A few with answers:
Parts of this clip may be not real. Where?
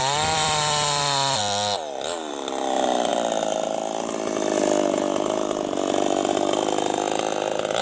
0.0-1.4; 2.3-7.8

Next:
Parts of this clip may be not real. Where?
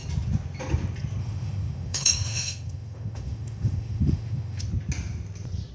1.2-4.6